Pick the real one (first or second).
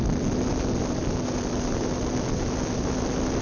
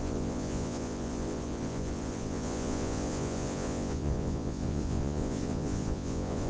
first